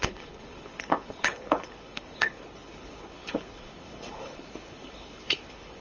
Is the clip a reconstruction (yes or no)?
yes